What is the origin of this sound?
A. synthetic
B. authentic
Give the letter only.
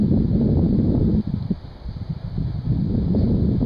B